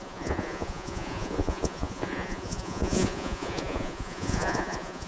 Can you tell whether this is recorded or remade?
remade